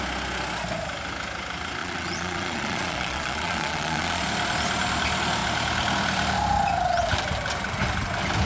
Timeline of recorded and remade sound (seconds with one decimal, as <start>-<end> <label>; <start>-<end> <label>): 0.0-1.8 recorded; 1.8-4.2 remade; 4.2-8.5 recorded